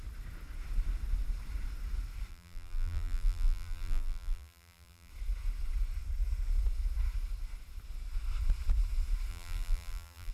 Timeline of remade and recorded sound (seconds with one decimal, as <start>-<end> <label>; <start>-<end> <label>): 0.0-2.3 recorded; 2.3-5.1 remade; 5.1-9.3 recorded; 9.3-10.3 remade